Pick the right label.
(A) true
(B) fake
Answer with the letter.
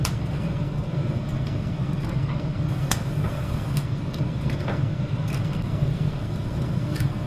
B